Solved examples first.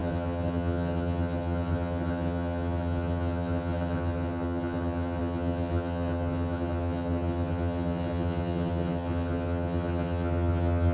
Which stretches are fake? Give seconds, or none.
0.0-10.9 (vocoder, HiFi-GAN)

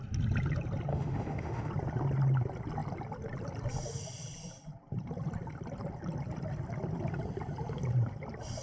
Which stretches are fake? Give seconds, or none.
0.9-1.7 (autoencoder, DAC-VAE)